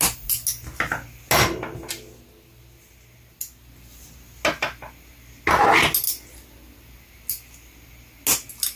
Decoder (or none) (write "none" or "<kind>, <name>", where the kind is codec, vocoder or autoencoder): none